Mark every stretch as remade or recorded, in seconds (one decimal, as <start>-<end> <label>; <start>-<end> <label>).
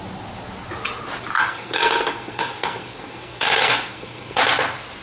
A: 0.0-1.4 recorded; 1.4-4.4 remade; 4.4-5.0 recorded